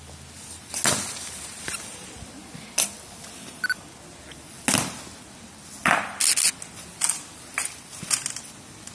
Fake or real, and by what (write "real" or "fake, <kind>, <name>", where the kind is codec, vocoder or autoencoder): real